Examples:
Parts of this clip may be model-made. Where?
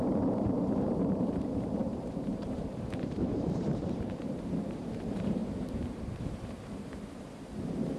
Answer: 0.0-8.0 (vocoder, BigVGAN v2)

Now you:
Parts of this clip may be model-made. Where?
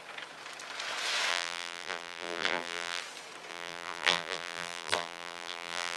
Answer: 1.3-3.0 (vocoder, BigVGAN v2); 3.5-6.0